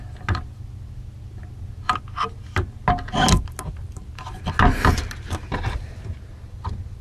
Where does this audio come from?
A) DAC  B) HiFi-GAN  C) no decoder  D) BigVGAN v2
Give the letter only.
C